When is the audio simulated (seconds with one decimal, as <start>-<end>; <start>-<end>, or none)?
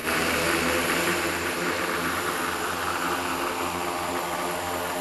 0.0-2.4